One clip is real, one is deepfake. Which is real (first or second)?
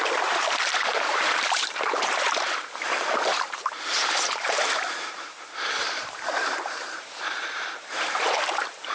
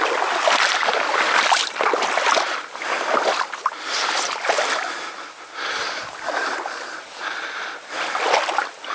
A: second